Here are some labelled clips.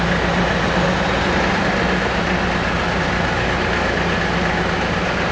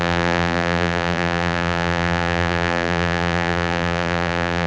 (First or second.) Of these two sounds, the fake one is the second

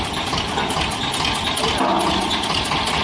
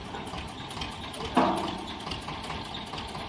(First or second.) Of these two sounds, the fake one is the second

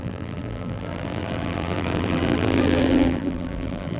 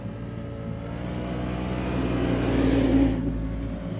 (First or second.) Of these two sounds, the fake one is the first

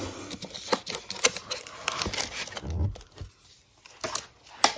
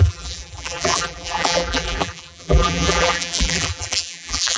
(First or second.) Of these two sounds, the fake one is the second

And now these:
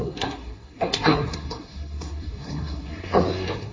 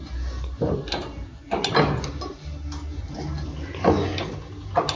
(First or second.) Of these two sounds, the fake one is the first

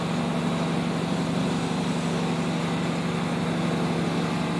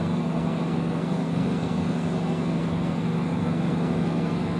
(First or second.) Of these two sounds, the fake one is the second